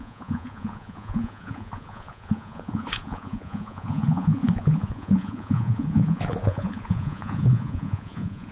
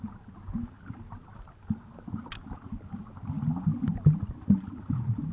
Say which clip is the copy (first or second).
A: first